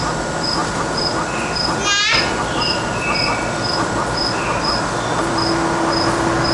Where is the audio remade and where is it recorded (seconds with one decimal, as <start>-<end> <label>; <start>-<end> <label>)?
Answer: 0.0-6.5 recorded